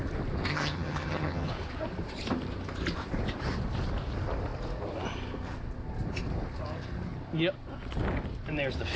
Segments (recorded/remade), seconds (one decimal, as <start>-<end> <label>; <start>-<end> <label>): 0.0-0.5 recorded; 0.5-1.5 remade; 1.5-9.0 recorded